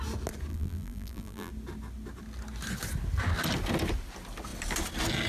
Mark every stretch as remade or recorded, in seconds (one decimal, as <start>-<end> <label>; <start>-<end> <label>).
0.0-0.5 recorded; 0.5-1.5 remade; 1.5-5.3 recorded